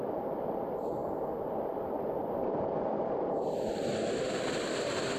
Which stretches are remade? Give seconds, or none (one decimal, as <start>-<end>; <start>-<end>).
none